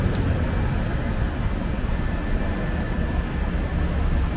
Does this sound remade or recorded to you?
recorded